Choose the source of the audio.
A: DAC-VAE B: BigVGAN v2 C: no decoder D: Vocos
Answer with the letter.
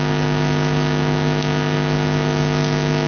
C